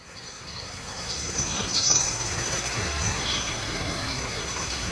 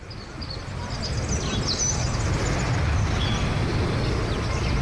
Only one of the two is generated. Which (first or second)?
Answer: first